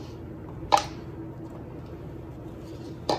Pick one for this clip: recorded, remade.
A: recorded